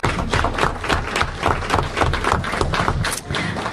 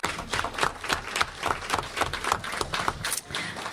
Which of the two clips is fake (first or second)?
second